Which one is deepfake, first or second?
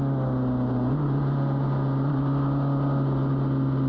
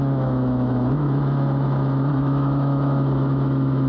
second